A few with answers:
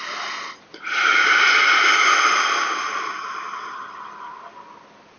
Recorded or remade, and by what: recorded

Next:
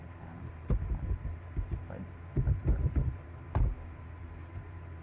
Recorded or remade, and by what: remade, vocoder, BigVGAN v2